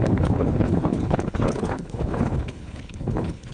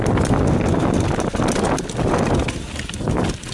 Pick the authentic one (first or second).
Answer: second